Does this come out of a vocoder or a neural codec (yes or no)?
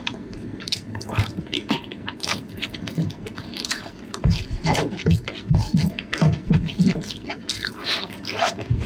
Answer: yes